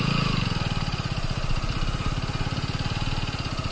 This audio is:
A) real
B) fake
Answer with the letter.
A